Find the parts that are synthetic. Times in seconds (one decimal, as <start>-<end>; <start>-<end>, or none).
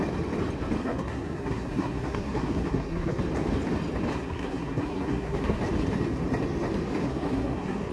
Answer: 0.8-3.2; 4.1-5.6; 7.0-7.9